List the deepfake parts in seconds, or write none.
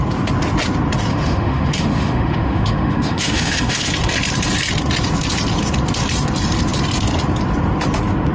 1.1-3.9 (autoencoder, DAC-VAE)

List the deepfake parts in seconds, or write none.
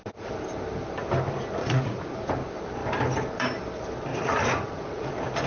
1.6-2.2 (vocoder, Vocos); 4.1-5.1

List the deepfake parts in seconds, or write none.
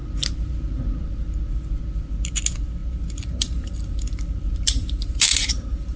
0.0-1.4 (vocoder, BigVGAN v2); 2.8-6.0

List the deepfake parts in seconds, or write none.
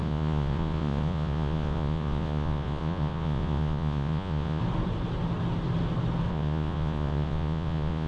0.0-4.6 (vocoder, Vocos); 6.3-8.1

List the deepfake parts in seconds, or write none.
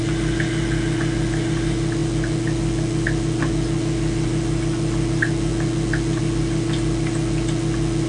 none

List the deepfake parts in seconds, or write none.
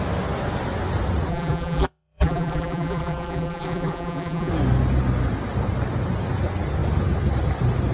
1.3-4.5 (vocoder, BigVGAN v2)